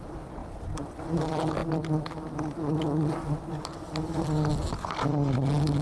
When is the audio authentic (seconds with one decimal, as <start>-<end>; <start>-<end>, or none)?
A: 1.6-3.5